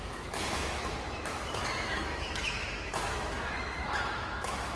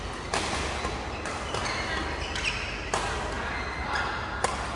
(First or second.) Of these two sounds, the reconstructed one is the first